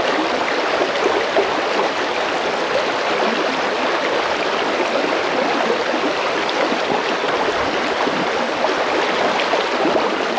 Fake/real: real